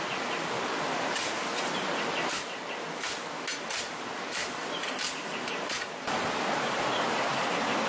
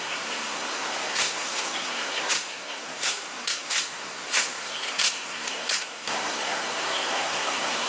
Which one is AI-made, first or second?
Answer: second